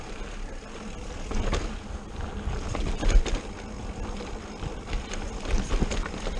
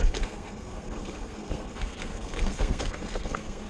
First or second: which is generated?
second